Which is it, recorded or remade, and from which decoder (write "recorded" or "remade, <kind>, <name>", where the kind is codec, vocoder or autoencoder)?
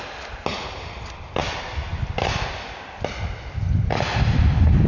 recorded